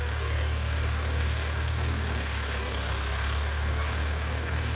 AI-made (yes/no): yes